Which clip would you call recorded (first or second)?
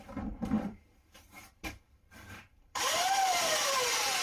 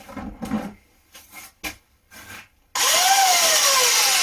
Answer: second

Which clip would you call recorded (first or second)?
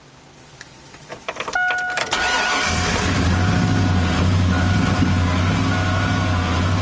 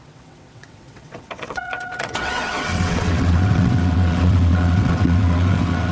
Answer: first